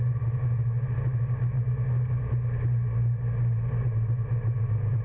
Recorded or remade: recorded